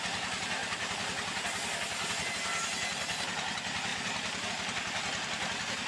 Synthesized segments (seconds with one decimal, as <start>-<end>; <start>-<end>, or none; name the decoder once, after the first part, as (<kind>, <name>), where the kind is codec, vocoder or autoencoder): 0.6-2.3 (vocoder, BigVGAN v2); 3.9-4.5